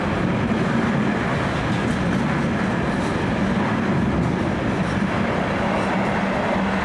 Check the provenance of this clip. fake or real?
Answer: real